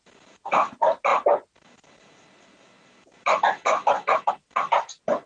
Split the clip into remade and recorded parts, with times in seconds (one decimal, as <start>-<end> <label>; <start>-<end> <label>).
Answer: 0.0-5.3 recorded